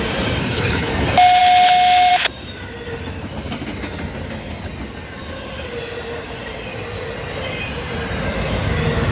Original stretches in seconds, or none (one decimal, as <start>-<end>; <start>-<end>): 0.0-0.4; 0.9-9.1